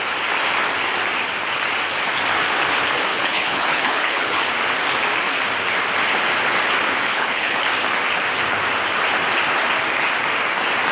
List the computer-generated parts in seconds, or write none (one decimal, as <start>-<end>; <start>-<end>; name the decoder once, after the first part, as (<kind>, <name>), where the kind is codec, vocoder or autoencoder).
3.1-4.4 (codec, HILCodec); 7.1-7.7